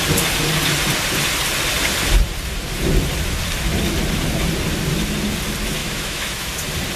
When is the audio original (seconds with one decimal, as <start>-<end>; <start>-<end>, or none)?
0.0-5.8; 6.5-7.0